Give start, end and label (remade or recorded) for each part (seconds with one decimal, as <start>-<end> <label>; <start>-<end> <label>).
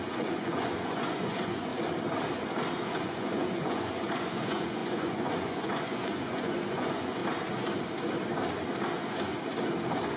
0.0-1.7 remade; 1.7-2.8 recorded; 2.8-7.2 remade; 7.2-8.9 recorded; 8.9-9.3 remade; 9.3-10.2 recorded